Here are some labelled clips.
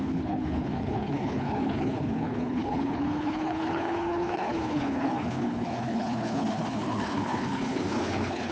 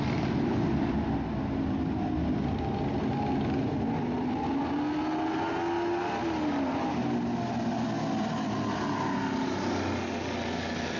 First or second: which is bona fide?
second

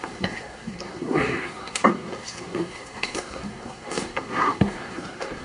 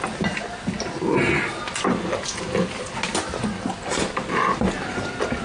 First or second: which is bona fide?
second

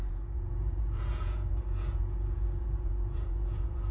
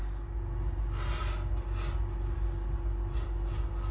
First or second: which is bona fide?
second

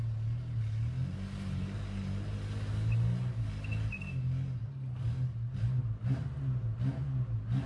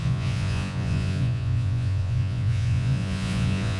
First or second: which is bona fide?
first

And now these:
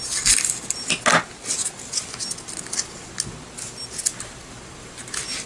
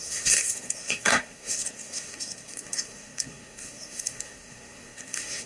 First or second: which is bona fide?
first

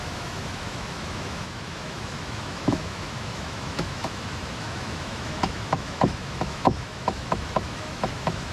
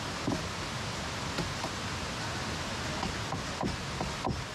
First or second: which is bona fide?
second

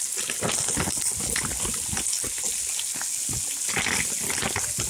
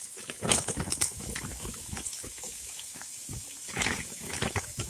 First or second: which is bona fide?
first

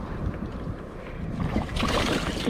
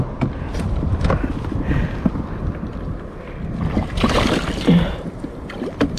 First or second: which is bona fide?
second